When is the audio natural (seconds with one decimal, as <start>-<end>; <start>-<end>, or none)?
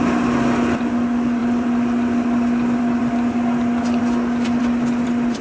0.0-5.4